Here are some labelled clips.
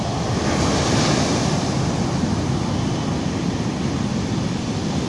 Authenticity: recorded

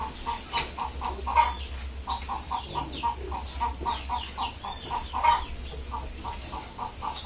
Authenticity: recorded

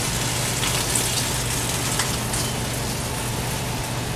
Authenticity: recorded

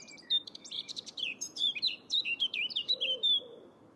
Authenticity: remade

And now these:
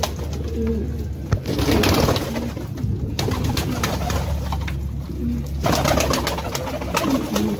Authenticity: recorded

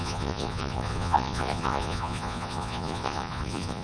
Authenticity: remade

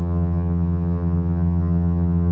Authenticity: remade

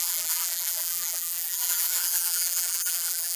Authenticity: remade